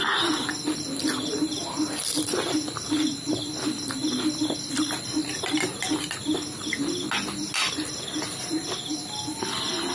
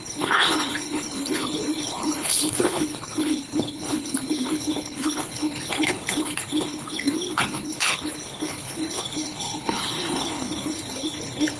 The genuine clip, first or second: first